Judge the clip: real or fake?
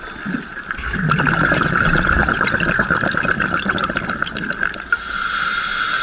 real